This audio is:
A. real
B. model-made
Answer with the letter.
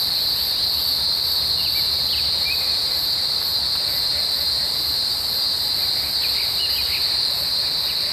A